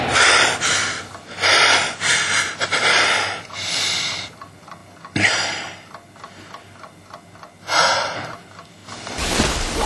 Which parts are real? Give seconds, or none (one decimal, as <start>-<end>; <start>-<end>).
0.0-9.9